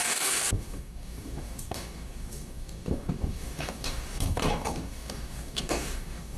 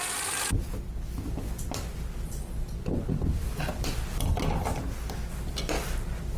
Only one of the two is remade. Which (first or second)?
first